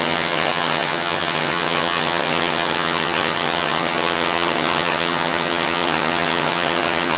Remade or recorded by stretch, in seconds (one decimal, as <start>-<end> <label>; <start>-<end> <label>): 0.0-7.2 remade